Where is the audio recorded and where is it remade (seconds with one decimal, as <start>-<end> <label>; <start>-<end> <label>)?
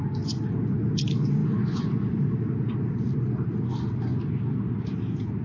0.0-4.1 remade; 4.1-5.4 recorded